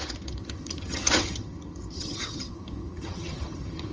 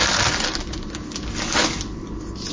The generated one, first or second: first